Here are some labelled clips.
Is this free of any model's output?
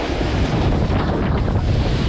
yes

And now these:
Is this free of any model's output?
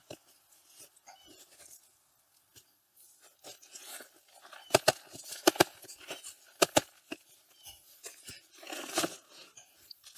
yes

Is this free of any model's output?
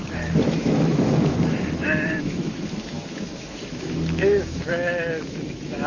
no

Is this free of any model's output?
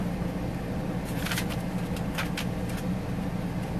yes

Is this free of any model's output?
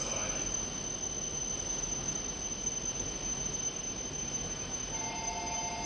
yes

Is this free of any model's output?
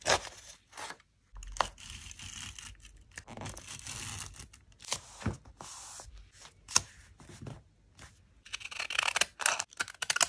yes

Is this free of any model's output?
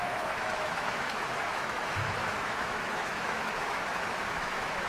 no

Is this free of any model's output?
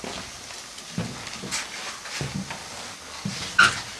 yes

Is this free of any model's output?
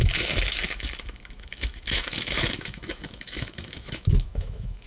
no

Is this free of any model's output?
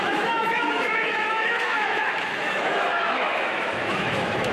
no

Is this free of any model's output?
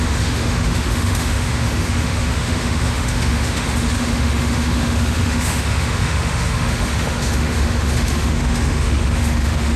no